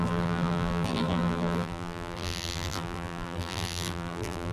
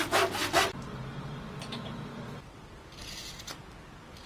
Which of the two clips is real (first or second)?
second